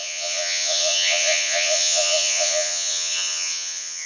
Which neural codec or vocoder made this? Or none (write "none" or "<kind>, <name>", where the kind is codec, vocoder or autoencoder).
vocoder, Vocos